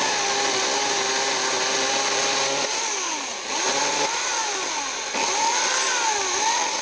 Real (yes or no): yes